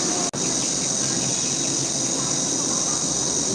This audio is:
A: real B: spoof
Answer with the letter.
A